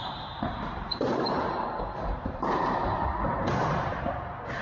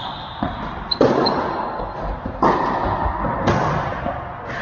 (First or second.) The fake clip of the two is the first